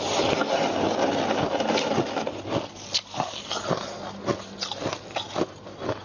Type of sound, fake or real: real